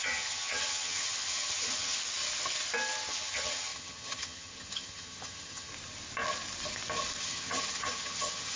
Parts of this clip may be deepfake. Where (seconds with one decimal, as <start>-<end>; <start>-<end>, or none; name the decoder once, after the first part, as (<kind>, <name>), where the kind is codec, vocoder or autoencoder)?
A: 0.0-2.0 (vocoder, HiFi-GAN); 3.1-5.7; 7.2-8.6